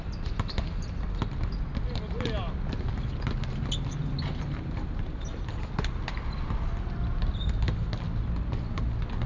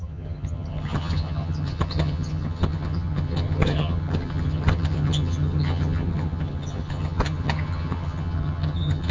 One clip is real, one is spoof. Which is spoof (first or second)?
second